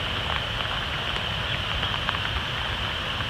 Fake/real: real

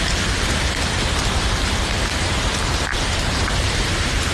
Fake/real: fake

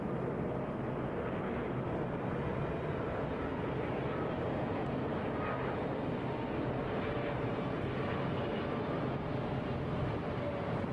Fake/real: real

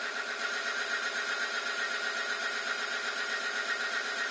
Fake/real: real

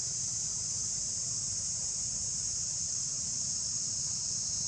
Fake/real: fake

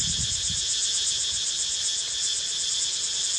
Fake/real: real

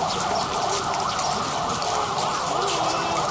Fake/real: fake